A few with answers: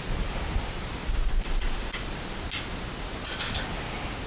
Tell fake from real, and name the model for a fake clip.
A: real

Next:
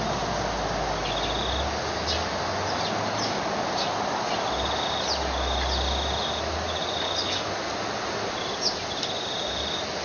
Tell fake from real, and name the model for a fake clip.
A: real